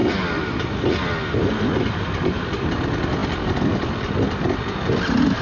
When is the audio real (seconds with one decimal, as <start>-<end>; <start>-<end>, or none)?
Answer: 2.3-5.4